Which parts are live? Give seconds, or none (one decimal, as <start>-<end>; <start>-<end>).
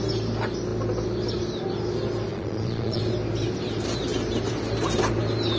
0.0-2.3; 3.0-5.6